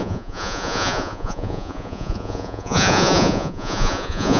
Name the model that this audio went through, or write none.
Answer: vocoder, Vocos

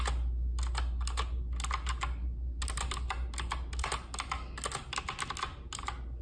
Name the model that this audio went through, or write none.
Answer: none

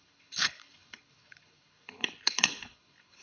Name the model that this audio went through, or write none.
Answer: codec, HILCodec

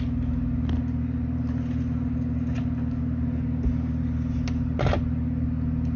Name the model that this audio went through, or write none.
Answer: none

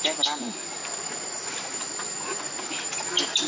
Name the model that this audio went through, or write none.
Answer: none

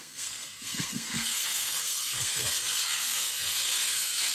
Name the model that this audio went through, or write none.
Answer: codec, SNAC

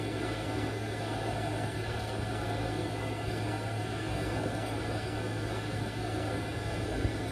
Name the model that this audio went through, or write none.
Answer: codec, SNAC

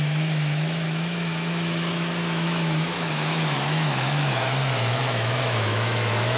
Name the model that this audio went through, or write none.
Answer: autoencoder, DAC-VAE